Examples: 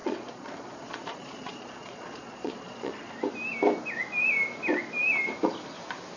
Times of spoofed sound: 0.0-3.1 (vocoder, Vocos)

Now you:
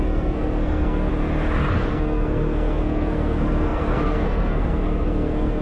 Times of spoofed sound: 0.0-1.1 (codec, SNAC); 1.9-5.6

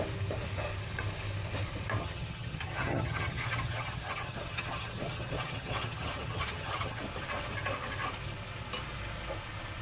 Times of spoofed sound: 2.0-7.0 (vocoder, HiFi-GAN)

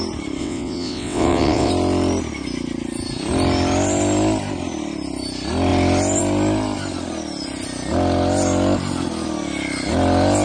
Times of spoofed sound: 0.4-1.7 (vocoder, WaveNeXt)

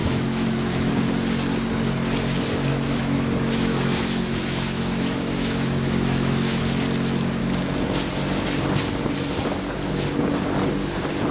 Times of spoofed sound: 0.0-0.9 (autoencoder, DAC-VAE); 2.7-6.6